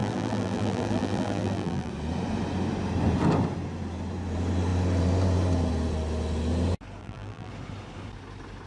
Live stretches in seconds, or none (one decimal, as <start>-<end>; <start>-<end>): 1.9-7.0; 7.5-8.7